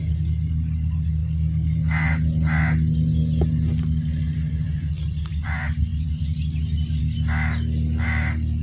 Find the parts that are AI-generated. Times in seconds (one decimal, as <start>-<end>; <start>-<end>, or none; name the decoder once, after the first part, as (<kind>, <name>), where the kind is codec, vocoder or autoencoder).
none